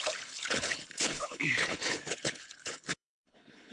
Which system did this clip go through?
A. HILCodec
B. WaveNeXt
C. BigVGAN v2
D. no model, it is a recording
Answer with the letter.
A